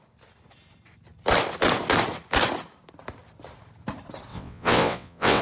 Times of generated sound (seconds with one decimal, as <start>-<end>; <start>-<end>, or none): 4.3-5.4